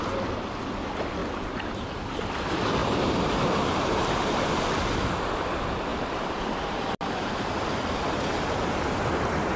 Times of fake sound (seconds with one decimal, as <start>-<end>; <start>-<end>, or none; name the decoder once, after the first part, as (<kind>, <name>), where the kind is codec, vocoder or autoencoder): 1.2-2.3 (vocoder, BigVGAN v2); 2.8-4.4